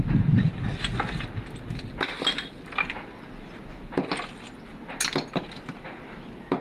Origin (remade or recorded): recorded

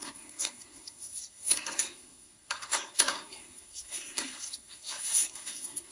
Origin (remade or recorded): remade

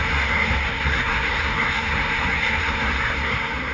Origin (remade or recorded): remade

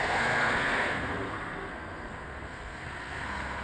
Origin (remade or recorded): remade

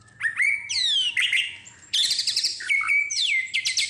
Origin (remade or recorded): recorded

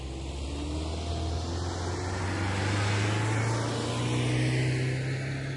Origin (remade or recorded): recorded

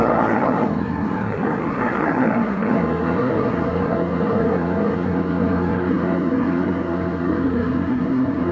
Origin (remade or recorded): remade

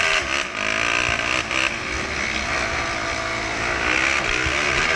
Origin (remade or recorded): recorded